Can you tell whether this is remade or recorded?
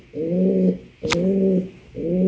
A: recorded